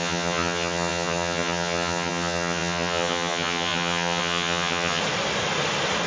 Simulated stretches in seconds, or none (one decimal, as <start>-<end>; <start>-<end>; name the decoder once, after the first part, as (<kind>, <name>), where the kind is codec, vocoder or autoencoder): 0.0-5.0 (vocoder, HiFi-GAN)

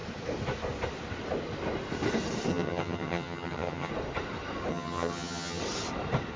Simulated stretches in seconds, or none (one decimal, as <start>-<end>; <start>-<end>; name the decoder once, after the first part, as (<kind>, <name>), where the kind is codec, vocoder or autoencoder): 2.5-3.9 (vocoder, HiFi-GAN); 4.7-5.6

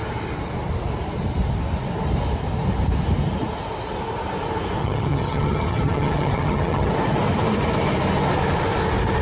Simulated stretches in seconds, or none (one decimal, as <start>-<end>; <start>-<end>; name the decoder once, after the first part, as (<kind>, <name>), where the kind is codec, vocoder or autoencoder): 4.8-6.9 (vocoder, HiFi-GAN)

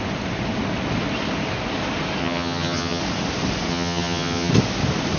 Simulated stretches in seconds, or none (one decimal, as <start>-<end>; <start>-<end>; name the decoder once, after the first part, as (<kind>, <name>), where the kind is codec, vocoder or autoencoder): 2.2-3.0 (vocoder, HiFi-GAN); 3.7-4.5